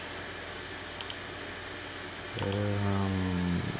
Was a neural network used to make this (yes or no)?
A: no